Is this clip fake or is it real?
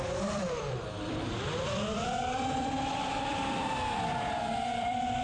fake